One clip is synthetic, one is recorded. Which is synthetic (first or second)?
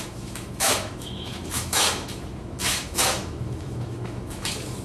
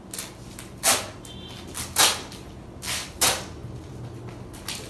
first